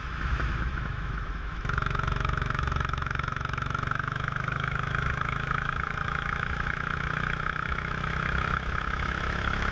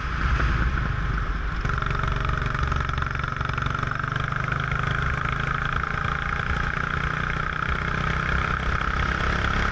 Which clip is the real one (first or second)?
second